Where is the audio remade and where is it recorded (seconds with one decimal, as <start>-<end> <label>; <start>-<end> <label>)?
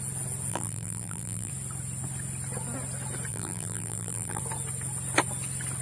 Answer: 0.0-0.5 recorded; 0.5-1.5 remade; 1.5-3.3 recorded; 3.3-4.4 remade; 4.4-5.8 recorded